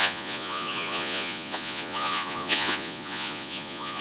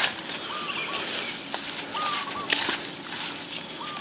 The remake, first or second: first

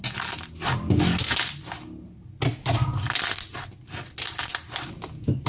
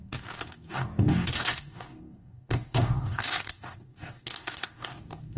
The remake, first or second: second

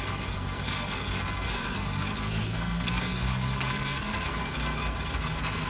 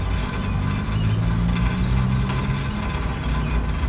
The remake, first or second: first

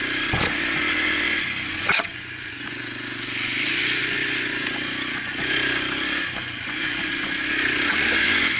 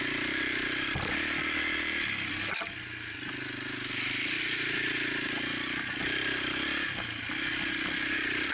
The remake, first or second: first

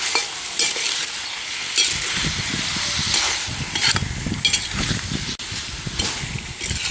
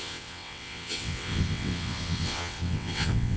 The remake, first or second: second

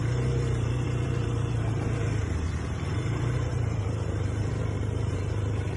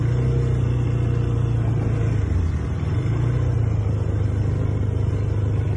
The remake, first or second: first